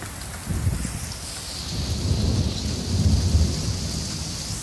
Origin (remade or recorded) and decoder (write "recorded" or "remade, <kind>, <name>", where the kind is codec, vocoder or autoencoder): recorded